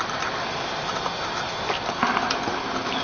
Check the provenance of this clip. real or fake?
real